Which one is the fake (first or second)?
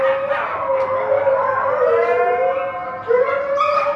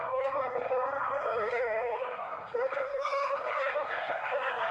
second